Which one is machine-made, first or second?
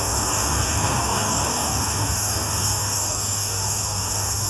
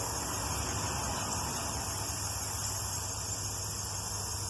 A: first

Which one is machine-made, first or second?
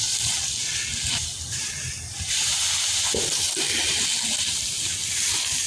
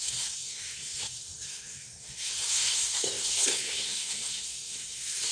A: second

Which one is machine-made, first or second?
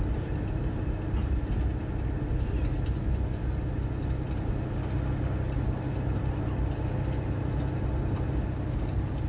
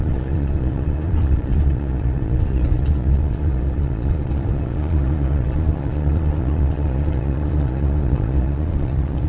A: second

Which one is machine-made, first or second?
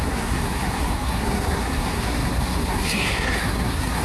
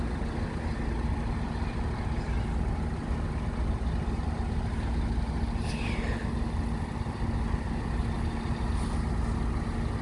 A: first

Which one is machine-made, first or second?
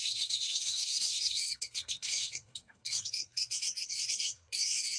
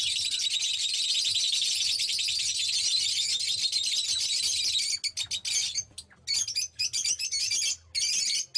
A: first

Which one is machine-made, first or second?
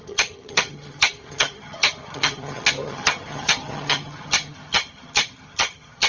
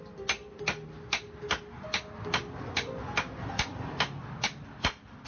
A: first